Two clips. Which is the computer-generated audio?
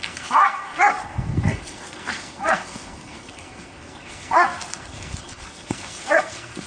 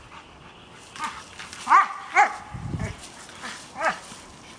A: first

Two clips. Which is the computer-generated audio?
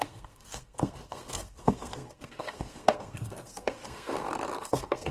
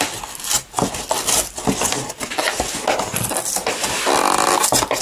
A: first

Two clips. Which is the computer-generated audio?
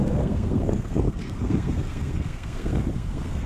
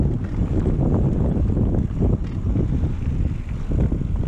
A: first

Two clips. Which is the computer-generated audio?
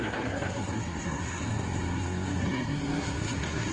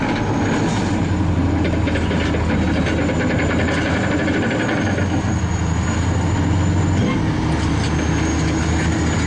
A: first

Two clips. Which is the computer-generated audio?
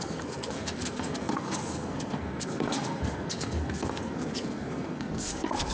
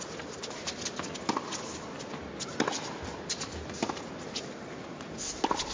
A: first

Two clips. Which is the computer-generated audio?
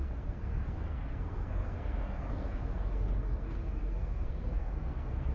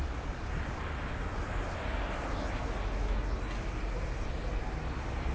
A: first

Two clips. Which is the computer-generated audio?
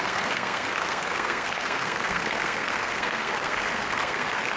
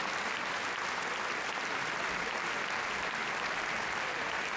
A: first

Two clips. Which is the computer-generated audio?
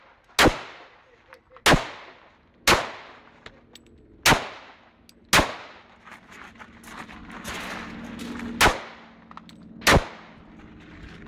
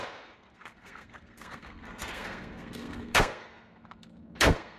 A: second